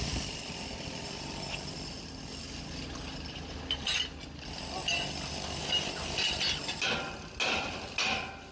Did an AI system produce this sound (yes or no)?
no